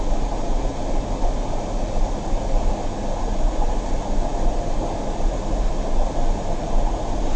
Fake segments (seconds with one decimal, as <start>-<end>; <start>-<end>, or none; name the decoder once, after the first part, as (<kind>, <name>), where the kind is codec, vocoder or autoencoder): none